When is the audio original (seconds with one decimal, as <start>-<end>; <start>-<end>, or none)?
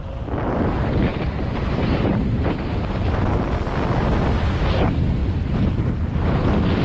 0.0-1.1; 2.8-6.8